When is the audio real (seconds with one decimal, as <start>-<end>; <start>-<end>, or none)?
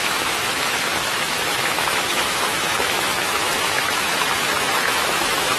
none